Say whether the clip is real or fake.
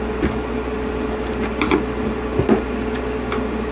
real